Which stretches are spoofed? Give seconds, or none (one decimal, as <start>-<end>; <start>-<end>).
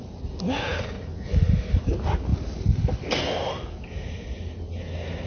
none